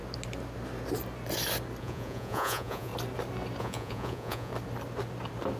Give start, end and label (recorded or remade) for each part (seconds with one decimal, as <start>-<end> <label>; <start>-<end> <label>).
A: 0.0-1.8 recorded; 1.8-2.9 remade; 2.9-3.6 recorded; 3.6-4.5 remade; 4.5-5.6 recorded